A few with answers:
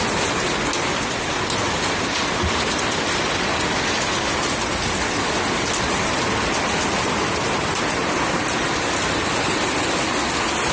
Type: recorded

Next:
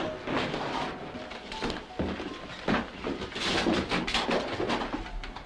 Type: recorded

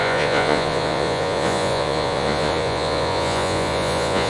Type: remade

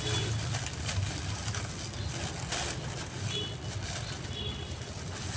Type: recorded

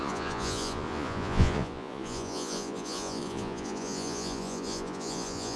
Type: remade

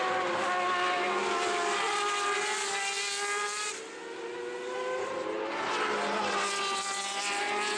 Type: recorded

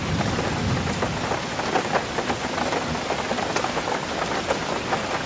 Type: recorded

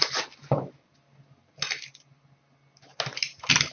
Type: recorded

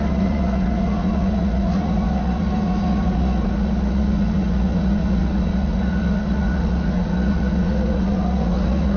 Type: remade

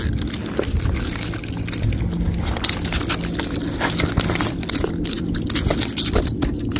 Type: recorded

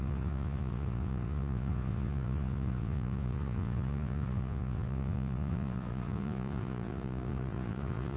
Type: remade